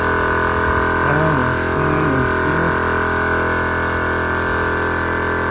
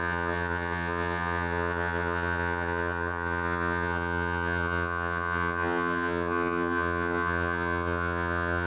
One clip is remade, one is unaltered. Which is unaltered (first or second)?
first